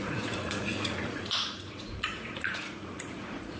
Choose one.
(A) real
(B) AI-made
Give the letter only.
B